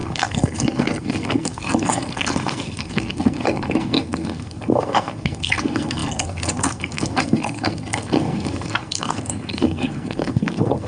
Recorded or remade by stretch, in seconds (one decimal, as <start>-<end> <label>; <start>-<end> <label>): 0.0-10.9 remade